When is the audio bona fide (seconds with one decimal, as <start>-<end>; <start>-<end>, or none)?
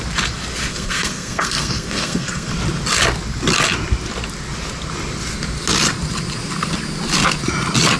0.0-0.7; 2.5-8.0